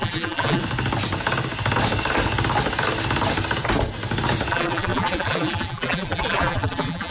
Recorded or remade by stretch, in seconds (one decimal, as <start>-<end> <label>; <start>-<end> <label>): 0.0-0.6 remade; 0.6-4.5 recorded; 4.5-7.1 remade